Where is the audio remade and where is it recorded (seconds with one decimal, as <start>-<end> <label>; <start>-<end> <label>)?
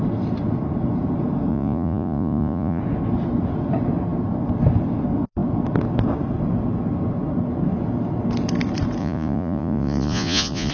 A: 0.0-1.5 recorded; 1.5-2.8 remade; 2.8-9.0 recorded; 9.0-10.7 remade